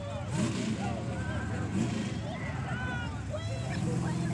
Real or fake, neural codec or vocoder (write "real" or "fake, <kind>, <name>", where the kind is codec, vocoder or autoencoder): real